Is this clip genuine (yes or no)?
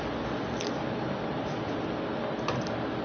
yes